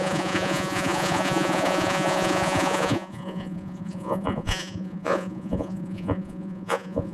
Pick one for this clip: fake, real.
fake